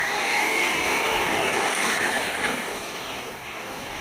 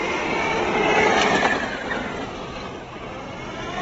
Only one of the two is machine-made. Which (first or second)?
first